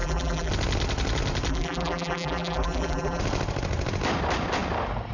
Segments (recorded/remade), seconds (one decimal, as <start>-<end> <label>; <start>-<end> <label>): 0.0-0.5 remade; 0.5-1.5 recorded; 1.5-3.2 remade; 3.2-5.1 recorded